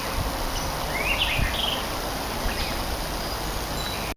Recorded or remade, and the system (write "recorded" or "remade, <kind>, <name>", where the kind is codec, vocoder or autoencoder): recorded